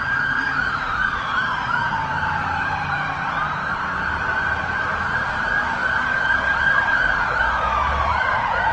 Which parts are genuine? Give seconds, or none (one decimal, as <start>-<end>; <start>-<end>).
5.8-6.6